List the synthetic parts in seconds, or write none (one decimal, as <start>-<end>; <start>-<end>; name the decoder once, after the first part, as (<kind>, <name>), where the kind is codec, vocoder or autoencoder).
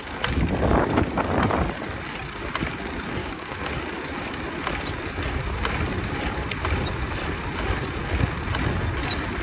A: 3.2-3.7 (codec, DAC)